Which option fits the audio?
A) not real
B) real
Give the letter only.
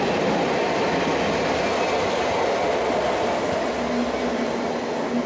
B